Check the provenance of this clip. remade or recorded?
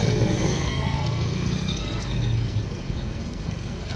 remade